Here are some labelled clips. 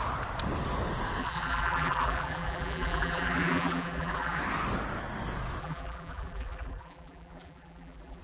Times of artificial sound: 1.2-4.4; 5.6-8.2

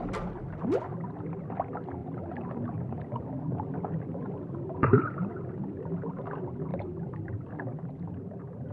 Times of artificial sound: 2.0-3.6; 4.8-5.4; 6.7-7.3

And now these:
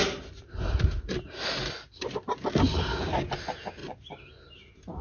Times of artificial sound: 0.0-2.5; 3.8-4.3

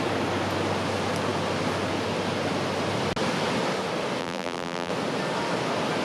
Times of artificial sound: 4.2-4.9